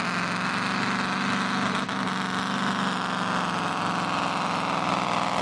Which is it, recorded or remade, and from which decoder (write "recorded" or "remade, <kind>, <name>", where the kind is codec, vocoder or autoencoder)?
recorded